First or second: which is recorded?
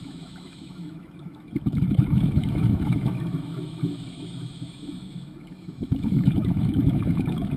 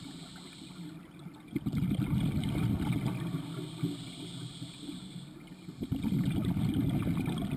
second